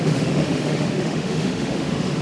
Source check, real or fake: fake